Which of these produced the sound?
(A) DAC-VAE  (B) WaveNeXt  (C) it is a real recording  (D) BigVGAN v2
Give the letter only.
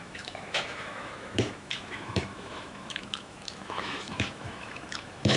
A